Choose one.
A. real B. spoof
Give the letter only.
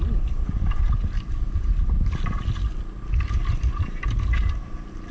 A